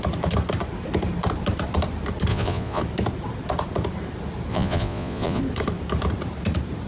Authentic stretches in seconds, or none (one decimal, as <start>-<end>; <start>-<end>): 0.0-2.3; 2.8-4.5; 5.4-6.9